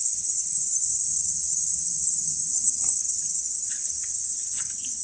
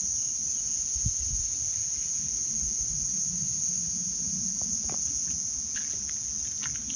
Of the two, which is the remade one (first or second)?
first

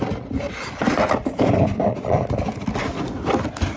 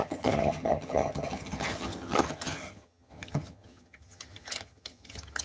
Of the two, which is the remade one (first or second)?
second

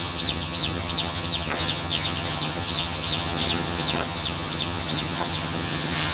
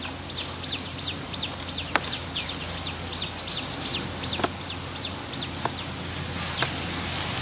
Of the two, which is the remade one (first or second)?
first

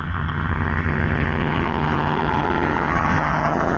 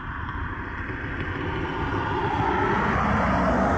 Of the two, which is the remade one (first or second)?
first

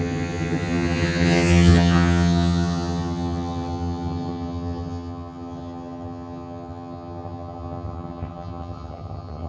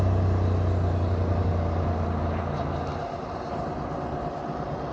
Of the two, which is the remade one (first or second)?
first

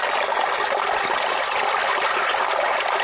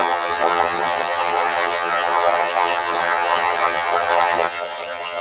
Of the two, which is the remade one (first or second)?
second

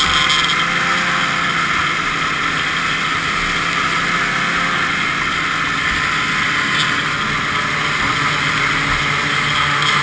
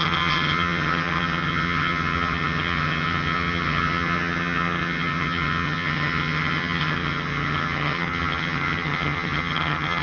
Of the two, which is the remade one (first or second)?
second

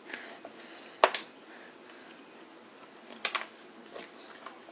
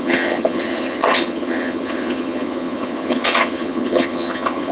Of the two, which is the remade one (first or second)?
second